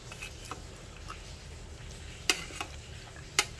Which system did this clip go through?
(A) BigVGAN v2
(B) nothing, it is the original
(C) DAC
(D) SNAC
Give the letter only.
B